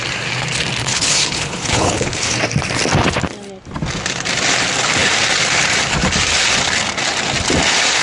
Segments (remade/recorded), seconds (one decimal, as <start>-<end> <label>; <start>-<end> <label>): 0.0-0.8 recorded; 0.8-2.4 remade; 2.4-8.0 recorded